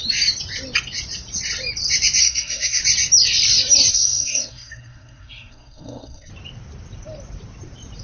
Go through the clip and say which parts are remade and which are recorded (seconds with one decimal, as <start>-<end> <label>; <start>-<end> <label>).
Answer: 0.0-2.2 recorded; 2.2-2.8 remade; 2.8-3.9 recorded; 3.9-6.3 remade; 6.3-8.0 recorded